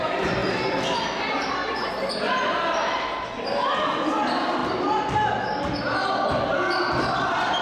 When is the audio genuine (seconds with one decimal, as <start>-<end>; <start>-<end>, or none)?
0.0-1.6; 2.1-7.6